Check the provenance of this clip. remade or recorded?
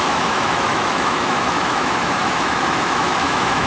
remade